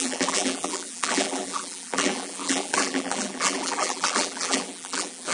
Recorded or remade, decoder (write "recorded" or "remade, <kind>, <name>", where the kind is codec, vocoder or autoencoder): remade, vocoder, BigVGAN v2